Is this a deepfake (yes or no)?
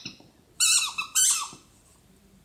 yes